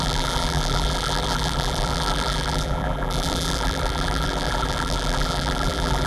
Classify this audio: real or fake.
fake